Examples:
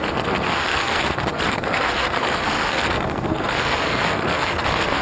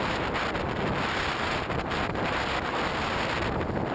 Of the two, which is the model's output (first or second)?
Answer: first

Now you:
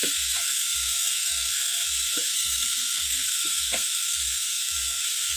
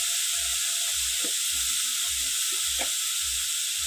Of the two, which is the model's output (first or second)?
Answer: first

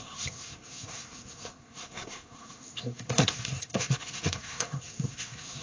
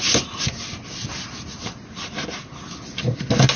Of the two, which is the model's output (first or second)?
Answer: first